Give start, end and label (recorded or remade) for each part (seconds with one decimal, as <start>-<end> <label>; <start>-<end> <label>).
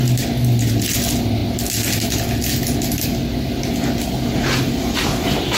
0.0-5.6 recorded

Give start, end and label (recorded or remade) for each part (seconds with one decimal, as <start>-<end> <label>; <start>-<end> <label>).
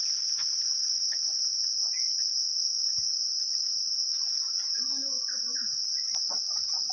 0.0-6.9 recorded